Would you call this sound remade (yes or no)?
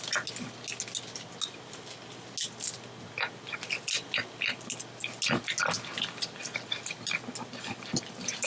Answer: no